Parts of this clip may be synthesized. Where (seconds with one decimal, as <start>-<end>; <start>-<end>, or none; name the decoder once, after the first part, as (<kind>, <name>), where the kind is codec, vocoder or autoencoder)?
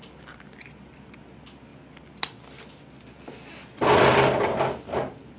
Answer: none